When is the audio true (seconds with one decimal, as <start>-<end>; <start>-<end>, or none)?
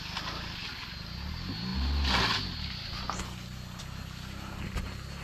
0.0-5.2